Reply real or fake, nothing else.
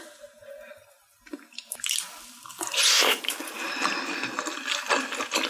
fake